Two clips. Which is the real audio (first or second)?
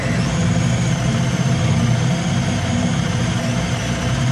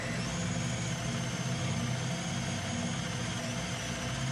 second